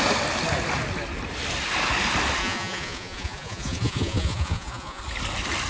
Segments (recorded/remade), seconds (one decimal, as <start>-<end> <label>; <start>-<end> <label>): 0.0-2.4 recorded; 2.4-5.0 remade; 5.0-5.7 recorded

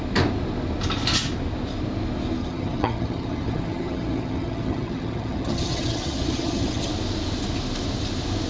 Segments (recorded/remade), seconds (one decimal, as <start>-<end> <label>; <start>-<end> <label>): 0.0-2.4 recorded; 2.4-6.9 remade; 6.9-8.5 recorded

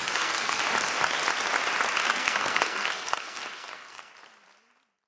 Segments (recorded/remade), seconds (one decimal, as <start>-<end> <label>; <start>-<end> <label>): 0.0-0.6 remade; 0.6-2.0 recorded; 2.0-4.1 remade; 4.1-5.1 recorded